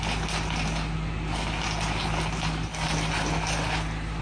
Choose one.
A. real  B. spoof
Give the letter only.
A